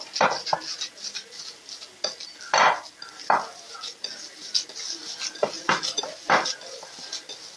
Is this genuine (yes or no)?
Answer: yes